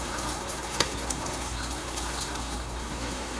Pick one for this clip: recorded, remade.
remade